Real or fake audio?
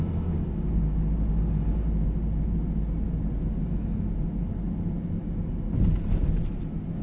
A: real